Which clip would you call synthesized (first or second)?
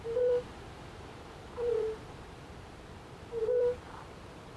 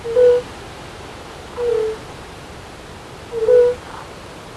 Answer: first